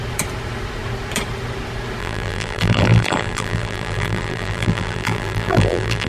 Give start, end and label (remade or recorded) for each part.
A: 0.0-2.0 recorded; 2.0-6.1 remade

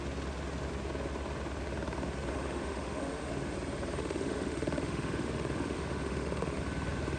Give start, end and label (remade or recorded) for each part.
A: 0.0-2.3 recorded; 2.3-3.3 remade; 3.3-4.0 recorded; 4.0-6.6 remade; 6.6-7.2 recorded

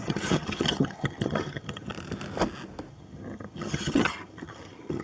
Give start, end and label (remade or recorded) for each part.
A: 0.0-1.9 remade; 1.9-2.9 recorded; 2.9-5.0 remade

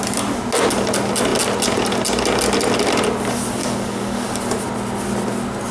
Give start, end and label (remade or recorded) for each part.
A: 0.0-3.6 recorded; 3.6-4.4 remade; 4.4-5.7 recorded

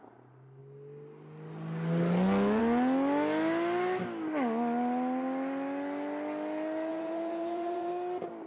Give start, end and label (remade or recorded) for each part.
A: 0.0-6.9 recorded; 6.9-7.9 remade; 7.9-8.5 recorded